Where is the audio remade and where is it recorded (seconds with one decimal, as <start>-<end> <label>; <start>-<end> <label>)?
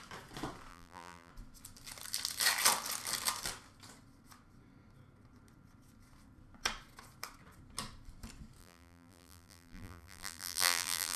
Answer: 0.0-0.7 recorded; 0.7-1.3 remade; 1.3-8.6 recorded; 8.6-11.2 remade